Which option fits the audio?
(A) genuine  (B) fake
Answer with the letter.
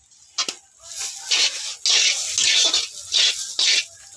A